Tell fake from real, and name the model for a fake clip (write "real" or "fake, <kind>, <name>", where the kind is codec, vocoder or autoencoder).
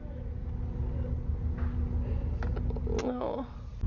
real